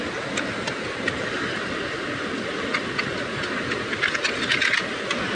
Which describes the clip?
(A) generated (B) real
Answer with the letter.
B